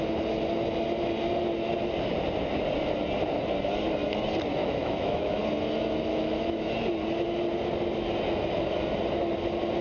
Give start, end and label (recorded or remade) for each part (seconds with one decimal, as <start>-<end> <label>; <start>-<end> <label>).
0.0-4.6 recorded; 4.6-5.4 remade; 5.4-6.1 recorded; 6.1-6.7 remade; 6.7-9.8 recorded